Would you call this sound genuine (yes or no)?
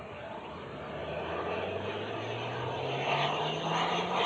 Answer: yes